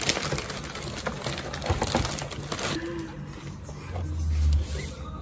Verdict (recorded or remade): recorded